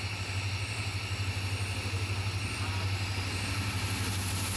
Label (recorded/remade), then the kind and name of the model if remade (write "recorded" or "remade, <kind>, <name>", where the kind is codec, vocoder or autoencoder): recorded